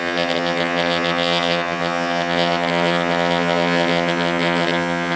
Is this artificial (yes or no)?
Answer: yes